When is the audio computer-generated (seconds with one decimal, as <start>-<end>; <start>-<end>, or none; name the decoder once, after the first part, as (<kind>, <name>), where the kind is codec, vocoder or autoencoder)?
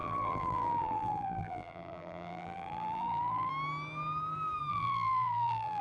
0.0-3.5 (vocoder, BigVGAN v2); 4.7-5.8